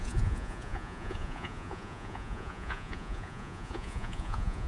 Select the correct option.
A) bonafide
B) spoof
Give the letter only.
B